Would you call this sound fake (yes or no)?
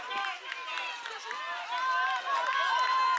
no